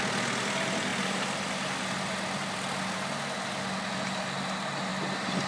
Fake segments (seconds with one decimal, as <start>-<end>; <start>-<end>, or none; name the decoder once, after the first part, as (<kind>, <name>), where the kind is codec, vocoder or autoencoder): none